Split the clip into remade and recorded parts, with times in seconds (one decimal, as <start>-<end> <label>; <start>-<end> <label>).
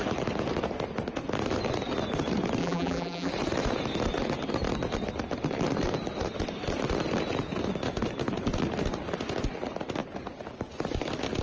0.0-2.6 recorded; 2.6-3.3 remade; 3.3-11.4 recorded